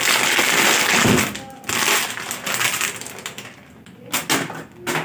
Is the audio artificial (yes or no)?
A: no